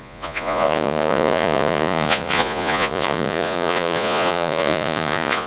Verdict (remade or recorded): remade